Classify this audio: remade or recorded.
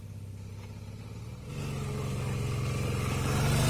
recorded